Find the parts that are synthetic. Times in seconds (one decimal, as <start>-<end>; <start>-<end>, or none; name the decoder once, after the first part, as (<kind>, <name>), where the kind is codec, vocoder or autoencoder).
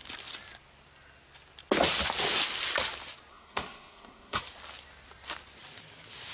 3.3-4.4 (codec, SNAC)